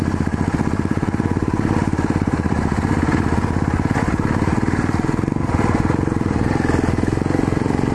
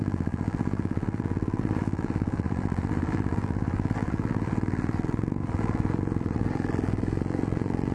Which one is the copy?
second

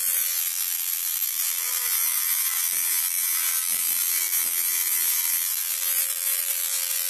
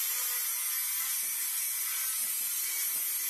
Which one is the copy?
first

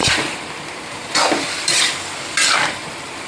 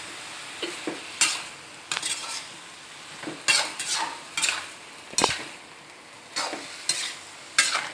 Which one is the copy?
first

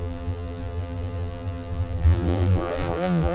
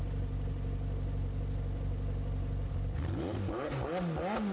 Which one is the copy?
first